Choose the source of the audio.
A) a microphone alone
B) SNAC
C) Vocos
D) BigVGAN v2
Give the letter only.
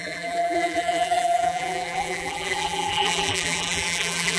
D